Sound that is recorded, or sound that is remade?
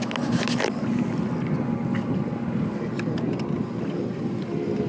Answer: recorded